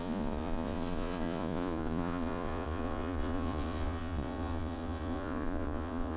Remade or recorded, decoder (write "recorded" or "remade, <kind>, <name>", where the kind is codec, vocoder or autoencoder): remade, vocoder, Vocos